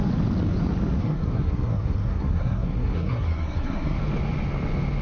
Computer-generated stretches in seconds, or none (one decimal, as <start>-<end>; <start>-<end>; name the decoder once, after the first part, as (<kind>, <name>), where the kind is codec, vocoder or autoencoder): 1.0-4.0 (codec, SNAC)